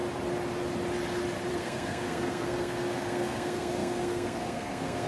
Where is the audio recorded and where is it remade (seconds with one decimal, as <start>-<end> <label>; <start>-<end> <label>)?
0.0-1.5 recorded; 1.5-5.1 remade